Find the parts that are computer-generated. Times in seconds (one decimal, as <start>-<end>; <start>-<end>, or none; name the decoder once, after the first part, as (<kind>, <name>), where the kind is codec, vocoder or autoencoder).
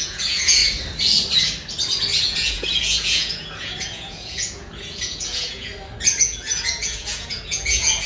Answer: 0.0-0.6 (vocoder, Vocos); 2.2-5.7; 6.2-8.1